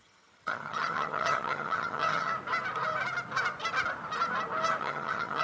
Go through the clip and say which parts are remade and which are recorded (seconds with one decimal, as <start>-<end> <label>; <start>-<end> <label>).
0.0-2.3 remade; 2.3-4.8 recorded; 4.8-5.4 remade